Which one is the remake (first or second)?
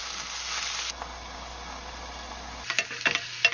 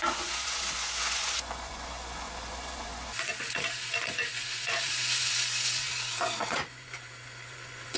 second